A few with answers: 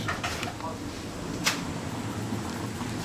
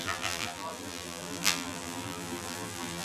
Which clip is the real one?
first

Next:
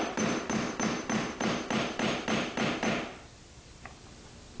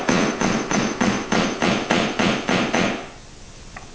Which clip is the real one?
first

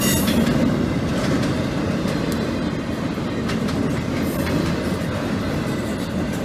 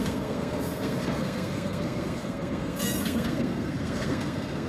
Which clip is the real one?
first